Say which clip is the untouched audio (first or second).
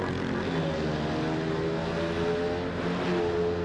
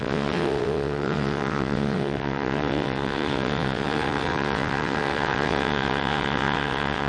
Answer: first